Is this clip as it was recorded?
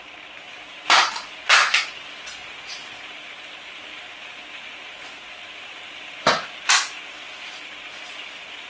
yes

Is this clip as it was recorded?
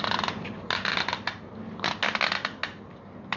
yes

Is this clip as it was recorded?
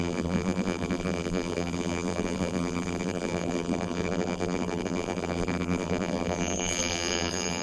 no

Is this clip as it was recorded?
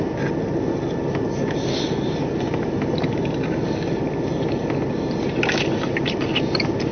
yes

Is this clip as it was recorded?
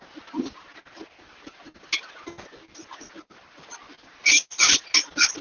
yes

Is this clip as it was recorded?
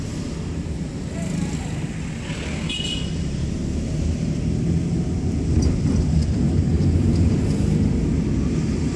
yes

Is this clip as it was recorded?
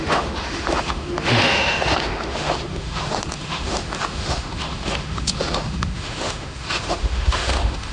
no